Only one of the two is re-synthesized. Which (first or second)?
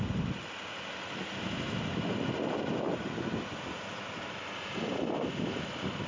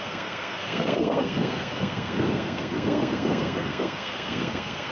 second